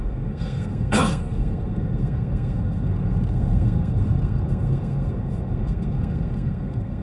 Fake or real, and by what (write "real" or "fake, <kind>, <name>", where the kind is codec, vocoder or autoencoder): fake, codec, SNAC